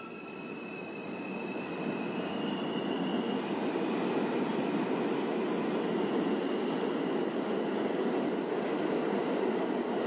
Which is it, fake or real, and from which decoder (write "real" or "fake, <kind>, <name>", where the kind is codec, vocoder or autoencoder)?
real